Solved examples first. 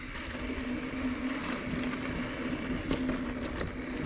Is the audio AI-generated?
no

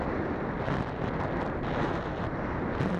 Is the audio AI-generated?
no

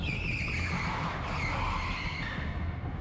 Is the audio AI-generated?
no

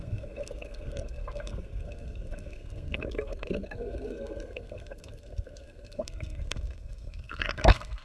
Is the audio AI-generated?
yes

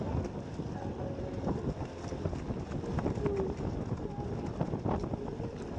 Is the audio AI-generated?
no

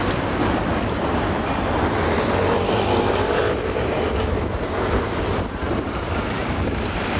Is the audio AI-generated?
yes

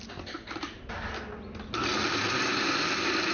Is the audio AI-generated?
no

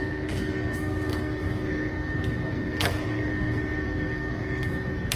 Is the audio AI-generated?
yes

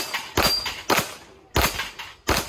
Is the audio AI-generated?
no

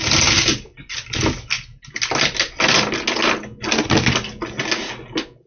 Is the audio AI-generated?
no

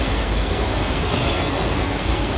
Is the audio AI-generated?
yes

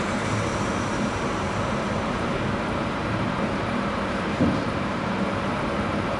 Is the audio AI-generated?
yes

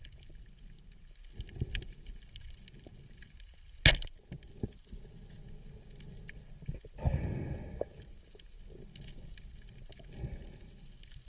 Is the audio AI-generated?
no